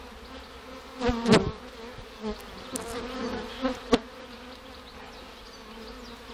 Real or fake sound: real